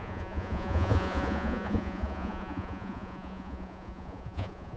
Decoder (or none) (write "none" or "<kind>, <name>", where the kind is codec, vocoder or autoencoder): vocoder, Vocos